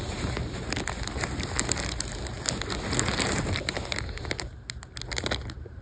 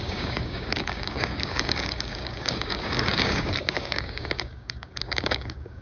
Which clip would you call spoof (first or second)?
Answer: second